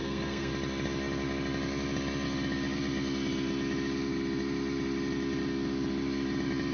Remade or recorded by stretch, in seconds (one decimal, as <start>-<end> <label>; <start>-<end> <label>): 0.0-0.5 remade; 0.5-6.7 recorded